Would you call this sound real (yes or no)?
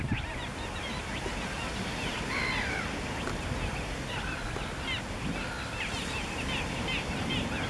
yes